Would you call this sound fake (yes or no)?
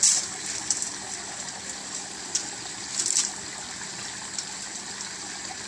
no